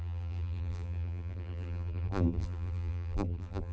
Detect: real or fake fake